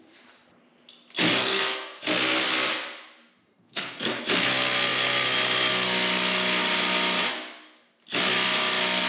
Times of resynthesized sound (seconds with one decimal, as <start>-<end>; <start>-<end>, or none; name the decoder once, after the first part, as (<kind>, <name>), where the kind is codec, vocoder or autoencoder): 1.4-2.0 (codec, SNAC); 3.5-4.2